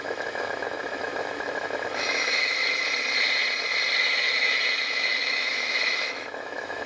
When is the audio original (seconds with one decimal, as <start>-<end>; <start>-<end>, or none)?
2.8-4.0